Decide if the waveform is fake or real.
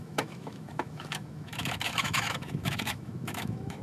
fake